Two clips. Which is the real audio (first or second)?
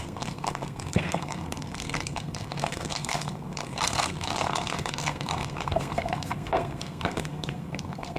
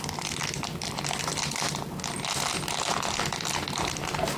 second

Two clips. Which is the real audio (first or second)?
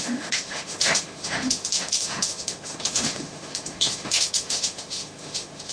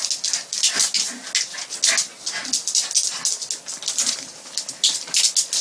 second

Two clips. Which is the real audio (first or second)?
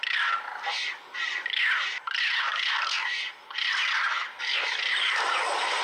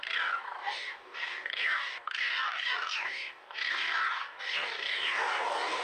first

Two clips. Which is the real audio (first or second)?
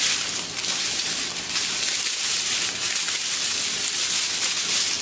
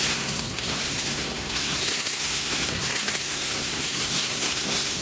first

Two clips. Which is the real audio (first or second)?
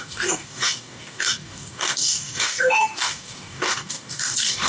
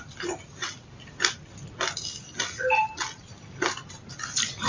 second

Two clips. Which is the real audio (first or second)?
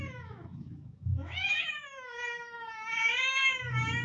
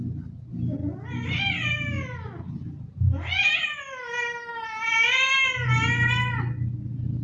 second